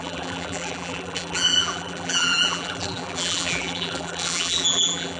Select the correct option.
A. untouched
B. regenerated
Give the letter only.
B